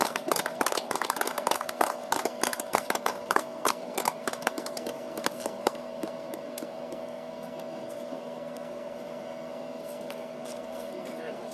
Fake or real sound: fake